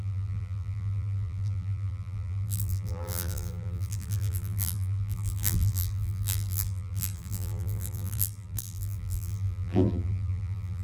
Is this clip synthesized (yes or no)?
yes